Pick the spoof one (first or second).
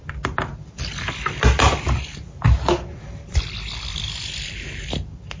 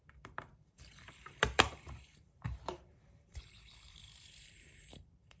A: second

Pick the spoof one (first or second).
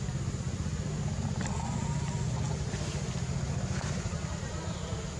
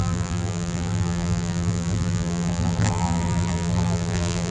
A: second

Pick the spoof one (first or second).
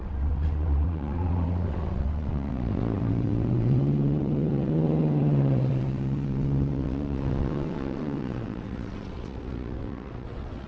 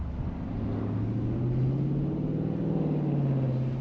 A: first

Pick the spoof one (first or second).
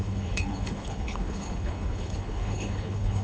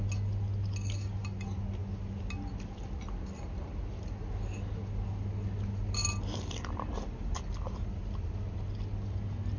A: first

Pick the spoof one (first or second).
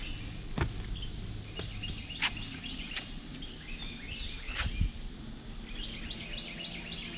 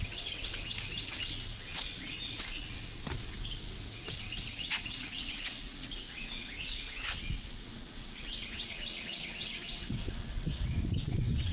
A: second